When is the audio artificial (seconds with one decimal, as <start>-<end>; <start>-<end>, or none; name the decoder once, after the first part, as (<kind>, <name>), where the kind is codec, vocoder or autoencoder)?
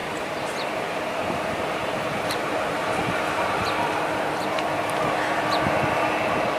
0.0-6.6 (vocoder, BigVGAN v2)